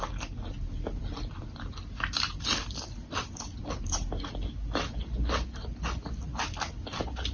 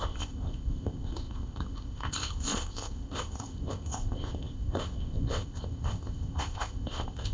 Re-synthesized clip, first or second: second